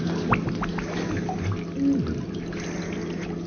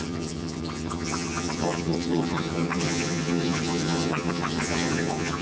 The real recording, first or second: first